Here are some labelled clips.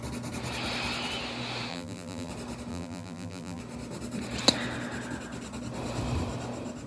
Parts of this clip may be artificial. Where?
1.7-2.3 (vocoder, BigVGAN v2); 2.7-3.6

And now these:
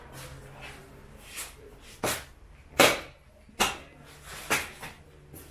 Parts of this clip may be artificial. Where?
0.8-2.3 (vocoder, BigVGAN v2)

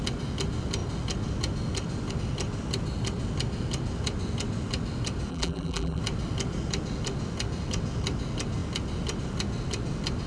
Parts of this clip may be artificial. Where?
5.3-6.0 (vocoder, BigVGAN v2)

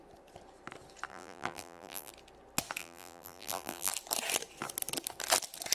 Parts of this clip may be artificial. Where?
1.1-2.1 (vocoder, BigVGAN v2); 2.8-3.9

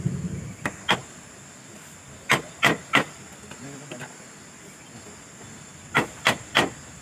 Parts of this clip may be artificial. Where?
5.7-7.0 (vocoder, BigVGAN v2)

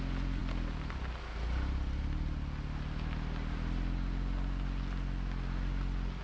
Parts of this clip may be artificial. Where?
none

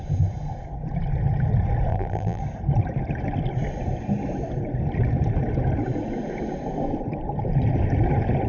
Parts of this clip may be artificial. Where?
1.9-2.4 (vocoder, BigVGAN v2)